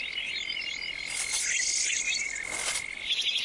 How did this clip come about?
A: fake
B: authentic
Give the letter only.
B